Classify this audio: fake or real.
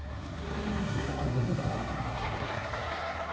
fake